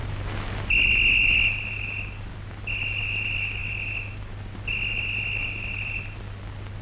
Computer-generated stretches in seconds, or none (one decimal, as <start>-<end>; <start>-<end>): none